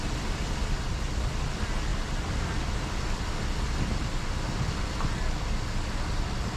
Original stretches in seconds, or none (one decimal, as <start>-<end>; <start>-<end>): 0.0-6.6